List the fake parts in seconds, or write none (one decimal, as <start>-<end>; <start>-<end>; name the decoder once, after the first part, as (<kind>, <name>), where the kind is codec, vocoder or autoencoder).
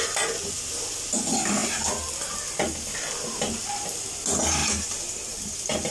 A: none